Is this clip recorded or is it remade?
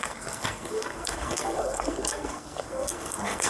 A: remade